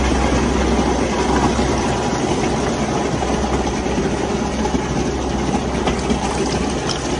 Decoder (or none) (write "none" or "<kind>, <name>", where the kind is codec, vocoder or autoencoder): none